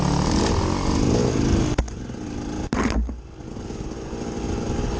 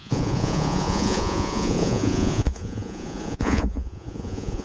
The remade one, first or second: second